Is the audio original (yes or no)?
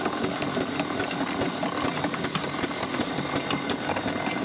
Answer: yes